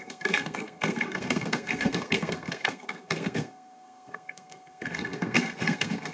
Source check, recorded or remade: remade